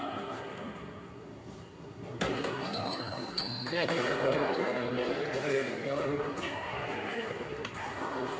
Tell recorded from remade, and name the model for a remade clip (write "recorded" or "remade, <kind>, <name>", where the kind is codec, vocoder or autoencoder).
remade, codec, SNAC